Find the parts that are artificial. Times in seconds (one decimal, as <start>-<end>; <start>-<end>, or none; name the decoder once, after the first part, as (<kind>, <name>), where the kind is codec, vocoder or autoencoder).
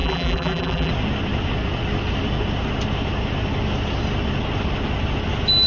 0.0-0.9 (vocoder, BigVGAN v2)